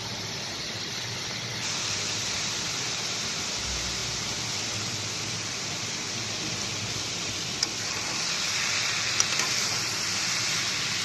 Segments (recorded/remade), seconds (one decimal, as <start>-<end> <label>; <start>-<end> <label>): 0.0-9.6 recorded; 9.6-10.4 remade; 10.4-11.0 recorded